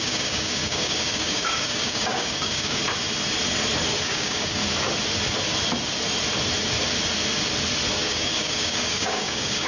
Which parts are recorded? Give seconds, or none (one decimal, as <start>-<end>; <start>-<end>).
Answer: 2.8-4.0; 4.6-7.9